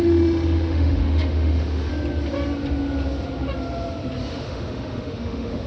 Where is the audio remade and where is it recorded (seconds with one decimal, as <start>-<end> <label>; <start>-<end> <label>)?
0.0-1.9 remade; 1.9-4.3 recorded; 4.3-5.7 remade